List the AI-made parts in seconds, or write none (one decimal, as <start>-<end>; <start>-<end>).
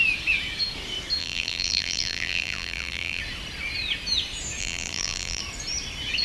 1.2-3.2; 4.6-5.4